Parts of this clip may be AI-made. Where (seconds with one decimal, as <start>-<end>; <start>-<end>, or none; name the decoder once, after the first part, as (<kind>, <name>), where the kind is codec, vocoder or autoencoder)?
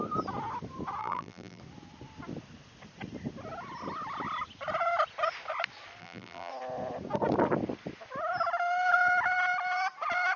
1.0-1.6 (vocoder, BigVGAN v2); 6.0-6.5